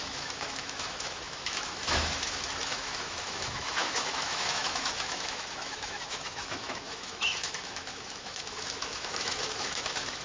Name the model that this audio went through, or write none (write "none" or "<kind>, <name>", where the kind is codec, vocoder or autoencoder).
autoencoder, DAC-VAE